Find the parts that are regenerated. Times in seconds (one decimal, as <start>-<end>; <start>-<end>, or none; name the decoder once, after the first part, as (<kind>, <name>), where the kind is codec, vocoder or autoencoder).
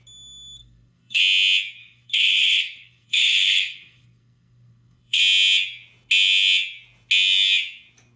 0.6-1.2 (codec, SNAC); 1.8-5.2